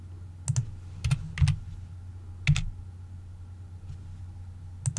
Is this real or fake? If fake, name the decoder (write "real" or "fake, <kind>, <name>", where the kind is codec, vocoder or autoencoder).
real